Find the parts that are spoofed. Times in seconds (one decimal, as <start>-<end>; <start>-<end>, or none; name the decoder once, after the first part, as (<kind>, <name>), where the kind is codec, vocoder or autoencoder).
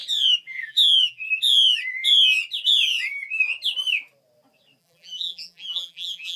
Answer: 0.6-1.2 (vocoder, BigVGAN v2); 4.8-6.4